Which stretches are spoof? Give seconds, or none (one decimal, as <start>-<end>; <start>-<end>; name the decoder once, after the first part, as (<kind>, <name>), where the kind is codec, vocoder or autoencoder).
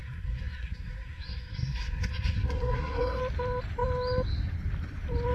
0.0-3.2 (codec, SNAC)